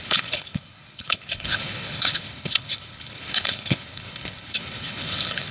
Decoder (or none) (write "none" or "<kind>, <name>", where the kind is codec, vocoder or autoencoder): codec, HILCodec